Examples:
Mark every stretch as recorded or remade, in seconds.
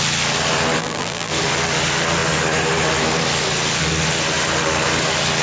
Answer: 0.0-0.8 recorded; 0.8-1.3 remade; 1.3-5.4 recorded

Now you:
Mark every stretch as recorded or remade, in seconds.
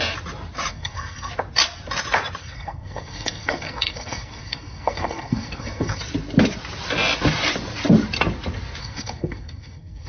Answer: 0.0-0.7 recorded; 0.7-1.3 remade; 1.3-2.4 recorded; 2.4-6.0 remade; 6.0-8.8 recorded; 8.8-10.1 remade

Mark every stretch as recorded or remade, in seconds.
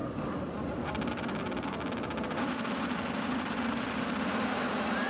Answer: 0.0-3.1 remade; 3.1-5.1 recorded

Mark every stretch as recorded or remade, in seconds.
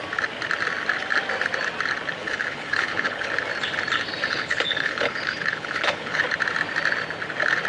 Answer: 0.0-2.2 recorded; 2.2-3.3 remade; 3.3-4.3 recorded; 4.3-6.2 remade; 6.2-7.7 recorded